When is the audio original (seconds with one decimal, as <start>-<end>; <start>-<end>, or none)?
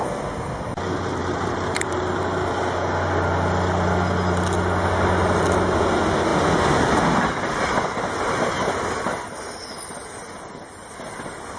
0.0-1.2; 2.2-11.6